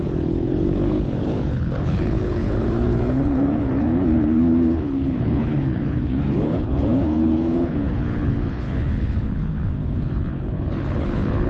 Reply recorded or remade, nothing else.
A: remade